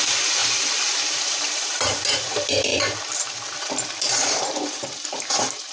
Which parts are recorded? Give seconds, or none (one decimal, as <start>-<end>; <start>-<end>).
0.0-0.4; 2.0-2.7